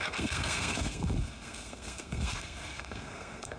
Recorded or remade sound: remade